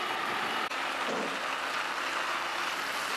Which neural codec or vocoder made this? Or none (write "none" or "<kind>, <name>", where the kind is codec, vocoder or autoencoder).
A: none